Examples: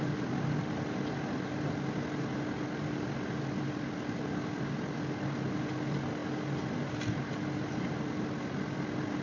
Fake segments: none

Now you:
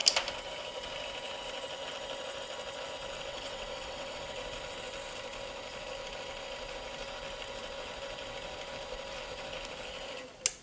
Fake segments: 3.3-4.2 (vocoder, WaveNeXt)

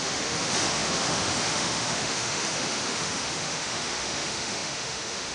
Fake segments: 0.0-5.3 (autoencoder, DAC-VAE)

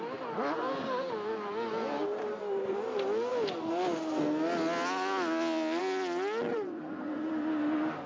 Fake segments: 6.5-7.3 (vocoder, WaveNeXt)

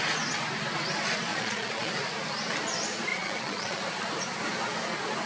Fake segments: 1.3-1.9 (vocoder, Vocos); 3.1-3.8

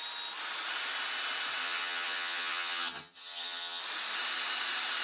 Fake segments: 1.6-3.8 (vocoder, HiFi-GAN)

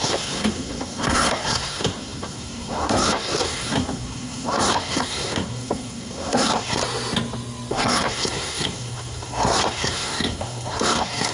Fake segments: 0.0-6.8 (codec, SNAC); 7.7-11.3